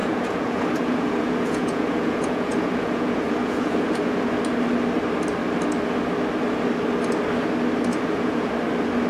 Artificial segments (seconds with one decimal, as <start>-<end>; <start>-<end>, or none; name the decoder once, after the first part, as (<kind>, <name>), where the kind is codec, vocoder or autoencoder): 0.0-4.4 (vocoder, Vocos); 7.9-8.5